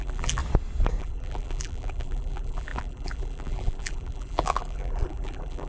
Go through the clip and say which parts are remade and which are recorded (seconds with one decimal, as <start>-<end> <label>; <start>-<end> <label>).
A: 0.0-0.4 remade; 0.4-1.0 recorded; 1.0-5.7 remade